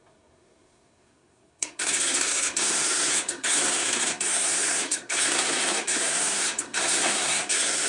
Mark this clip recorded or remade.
remade